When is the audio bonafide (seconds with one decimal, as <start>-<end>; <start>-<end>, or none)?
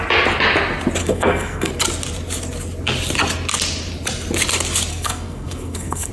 0.0-1.0; 1.7-4.9